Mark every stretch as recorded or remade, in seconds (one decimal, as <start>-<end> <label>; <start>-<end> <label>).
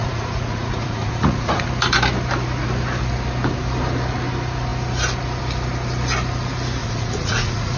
0.0-1.7 remade; 1.7-6.8 recorded; 6.8-7.8 remade